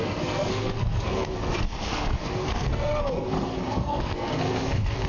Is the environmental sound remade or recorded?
remade